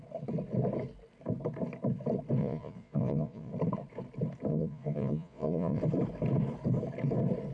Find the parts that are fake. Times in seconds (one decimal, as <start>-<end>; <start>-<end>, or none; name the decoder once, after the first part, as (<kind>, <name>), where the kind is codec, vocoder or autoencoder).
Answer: 2.4-3.5 (vocoder, Vocos); 4.5-5.8